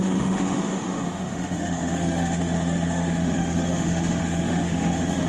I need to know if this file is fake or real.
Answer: fake